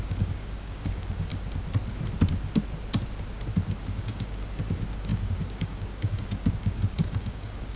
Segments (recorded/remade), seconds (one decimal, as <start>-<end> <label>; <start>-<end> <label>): 0.0-1.3 remade; 1.3-3.8 recorded; 3.8-7.8 remade